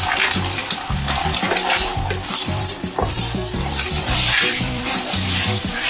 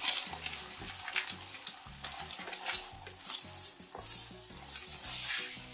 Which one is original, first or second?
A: second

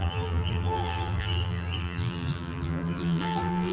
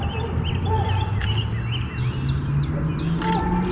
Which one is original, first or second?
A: second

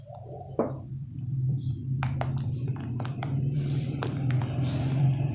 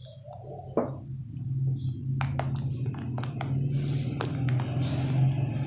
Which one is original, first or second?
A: second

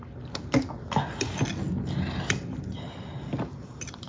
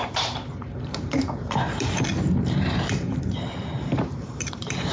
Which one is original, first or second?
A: first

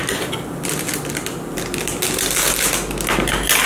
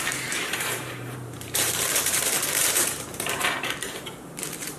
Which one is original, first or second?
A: first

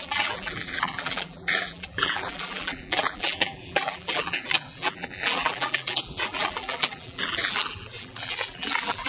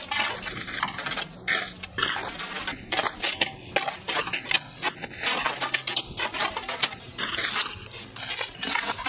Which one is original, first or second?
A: second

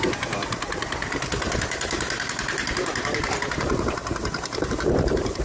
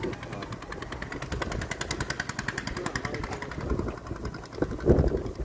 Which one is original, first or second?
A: second